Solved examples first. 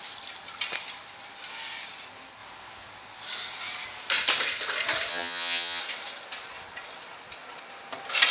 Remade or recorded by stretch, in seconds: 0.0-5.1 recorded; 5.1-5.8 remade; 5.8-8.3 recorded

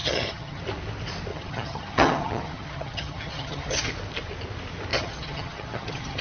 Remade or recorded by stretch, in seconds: 0.0-0.6 remade; 0.6-1.3 recorded; 1.3-3.9 remade; 3.9-4.9 recorded; 4.9-6.2 remade

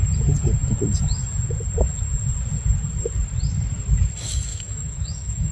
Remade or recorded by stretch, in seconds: 0.0-4.5 recorded; 4.5-5.5 remade